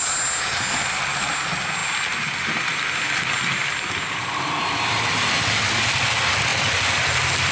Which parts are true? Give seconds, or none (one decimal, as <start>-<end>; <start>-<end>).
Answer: 0.0-7.5